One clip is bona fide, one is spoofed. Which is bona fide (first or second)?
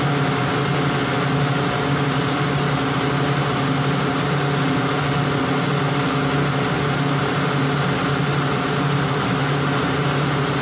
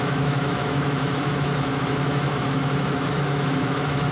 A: first